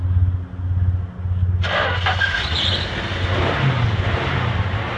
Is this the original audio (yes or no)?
yes